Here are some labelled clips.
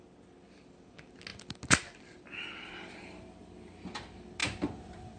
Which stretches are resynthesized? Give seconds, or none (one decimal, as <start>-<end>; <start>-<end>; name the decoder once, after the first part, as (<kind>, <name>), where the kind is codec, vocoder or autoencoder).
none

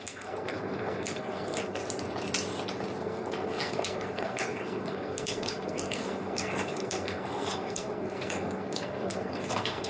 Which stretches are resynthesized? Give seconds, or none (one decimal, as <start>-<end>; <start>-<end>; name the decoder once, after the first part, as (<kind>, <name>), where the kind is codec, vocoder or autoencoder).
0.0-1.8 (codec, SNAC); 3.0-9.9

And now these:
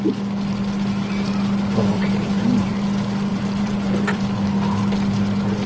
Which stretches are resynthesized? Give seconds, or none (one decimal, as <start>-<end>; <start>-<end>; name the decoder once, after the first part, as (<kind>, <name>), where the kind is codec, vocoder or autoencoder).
1.9-2.7 (vocoder, BigVGAN v2); 3.3-4.2

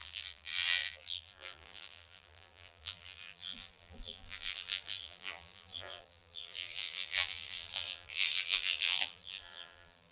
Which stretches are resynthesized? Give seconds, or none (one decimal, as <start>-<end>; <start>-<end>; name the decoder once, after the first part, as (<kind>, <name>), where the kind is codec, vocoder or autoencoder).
0.0-10.1 (vocoder, BigVGAN v2)